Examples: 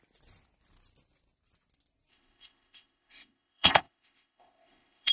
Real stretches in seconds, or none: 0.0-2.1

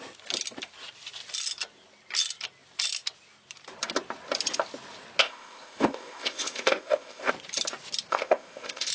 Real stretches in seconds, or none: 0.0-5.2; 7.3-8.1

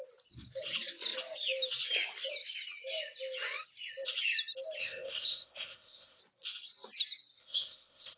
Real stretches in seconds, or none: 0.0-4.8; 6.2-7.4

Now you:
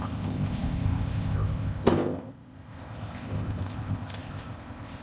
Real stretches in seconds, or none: none

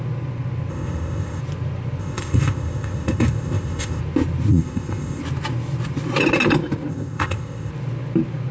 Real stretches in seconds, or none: 0.0-0.7; 1.4-2.0; 4.0-4.5; 5.2-6.9; 7.7-8.5